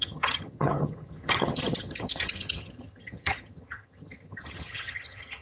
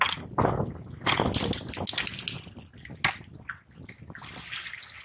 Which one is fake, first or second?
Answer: first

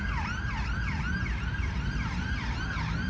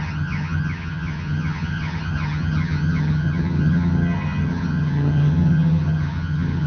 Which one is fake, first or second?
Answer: second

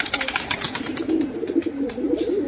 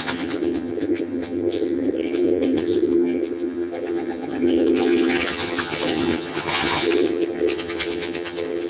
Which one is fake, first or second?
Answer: second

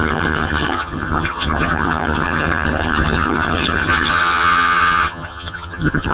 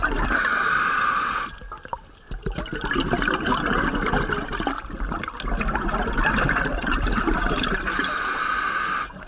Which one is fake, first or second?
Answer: first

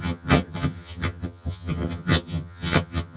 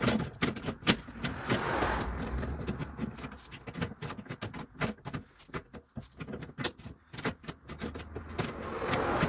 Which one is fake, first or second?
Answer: first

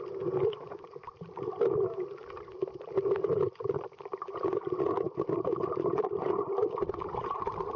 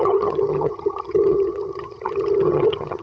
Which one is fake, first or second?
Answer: second